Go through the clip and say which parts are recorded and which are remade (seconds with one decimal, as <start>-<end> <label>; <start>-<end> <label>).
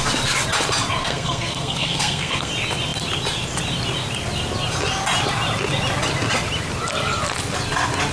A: 0.0-1.0 recorded; 1.0-2.5 remade; 2.5-8.1 recorded